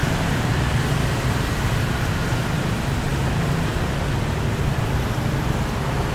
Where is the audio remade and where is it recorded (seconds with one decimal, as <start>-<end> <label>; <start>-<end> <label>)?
0.0-6.1 recorded